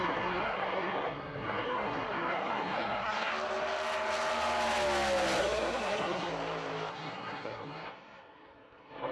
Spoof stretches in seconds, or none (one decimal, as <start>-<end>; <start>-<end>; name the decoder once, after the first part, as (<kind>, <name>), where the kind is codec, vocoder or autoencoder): 0.0-3.3 (codec, SNAC); 5.4-6.3; 6.9-9.1